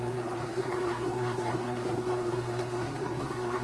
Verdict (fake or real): fake